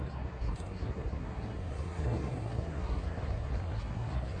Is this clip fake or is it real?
fake